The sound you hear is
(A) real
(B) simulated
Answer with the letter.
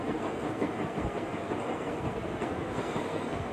B